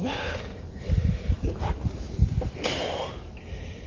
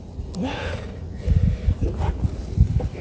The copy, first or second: first